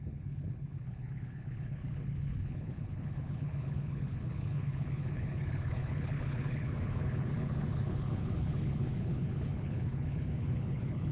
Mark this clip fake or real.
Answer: fake